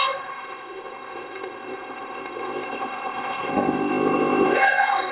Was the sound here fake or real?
fake